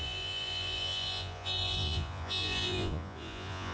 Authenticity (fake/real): fake